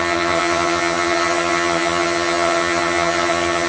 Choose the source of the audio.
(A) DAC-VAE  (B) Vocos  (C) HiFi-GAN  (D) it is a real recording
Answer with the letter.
C